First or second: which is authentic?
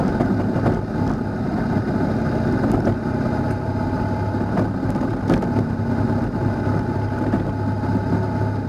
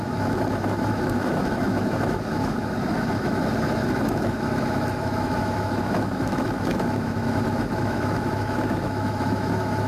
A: first